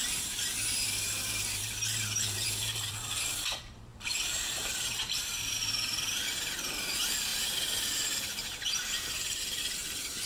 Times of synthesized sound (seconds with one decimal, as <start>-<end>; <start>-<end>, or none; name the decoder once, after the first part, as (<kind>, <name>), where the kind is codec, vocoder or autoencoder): 0.0-10.3 (vocoder, BigVGAN v2)